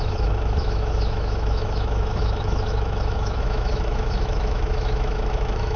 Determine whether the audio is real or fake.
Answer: fake